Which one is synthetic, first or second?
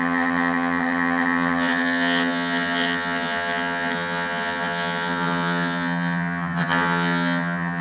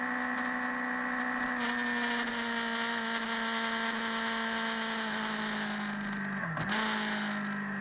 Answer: first